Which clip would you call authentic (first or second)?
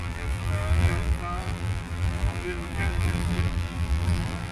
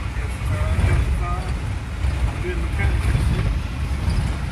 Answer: second